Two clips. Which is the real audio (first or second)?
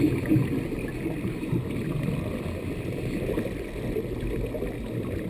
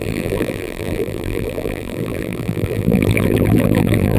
first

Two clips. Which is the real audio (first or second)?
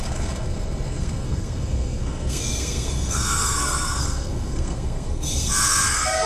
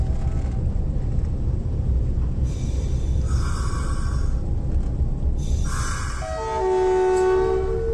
second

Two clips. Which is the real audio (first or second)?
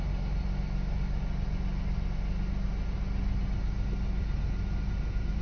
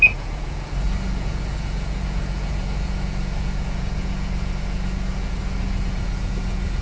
first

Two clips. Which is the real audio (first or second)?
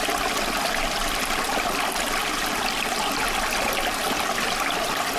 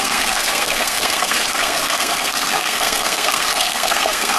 first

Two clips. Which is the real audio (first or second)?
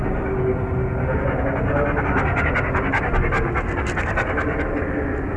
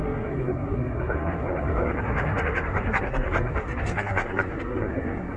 first